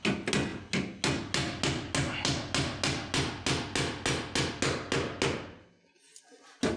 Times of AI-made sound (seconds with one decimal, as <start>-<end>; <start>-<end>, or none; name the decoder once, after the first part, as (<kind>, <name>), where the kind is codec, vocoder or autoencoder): none